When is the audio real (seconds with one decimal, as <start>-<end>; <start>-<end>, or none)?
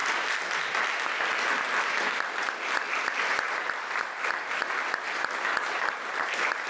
0.0-6.7